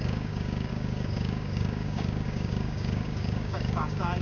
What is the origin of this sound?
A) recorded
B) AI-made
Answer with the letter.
B